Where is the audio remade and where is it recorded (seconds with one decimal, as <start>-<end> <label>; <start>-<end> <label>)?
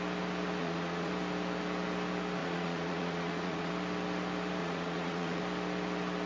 0.0-0.6 recorded; 0.6-1.1 remade; 1.1-2.4 recorded; 2.4-3.7 remade; 3.7-4.6 recorded; 4.6-5.4 remade; 5.4-6.3 recorded